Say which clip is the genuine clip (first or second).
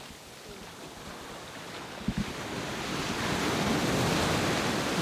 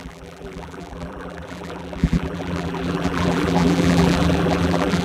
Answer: first